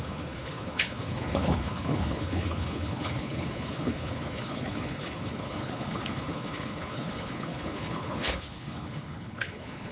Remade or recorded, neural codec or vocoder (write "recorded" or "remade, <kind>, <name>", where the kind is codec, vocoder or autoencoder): remade, codec, HILCodec